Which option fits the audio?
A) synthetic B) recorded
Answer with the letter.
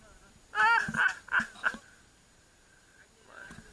B